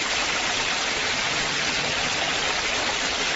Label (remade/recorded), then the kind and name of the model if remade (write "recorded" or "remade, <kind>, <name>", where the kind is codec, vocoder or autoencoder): recorded